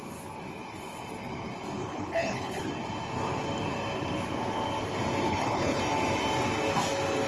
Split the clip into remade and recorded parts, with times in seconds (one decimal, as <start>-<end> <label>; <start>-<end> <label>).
0.0-1.8 recorded; 1.8-2.7 remade; 2.7-5.3 recorded; 5.3-5.8 remade; 5.8-7.3 recorded